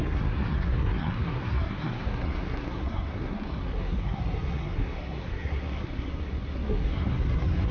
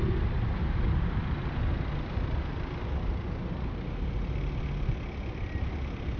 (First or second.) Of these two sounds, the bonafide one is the second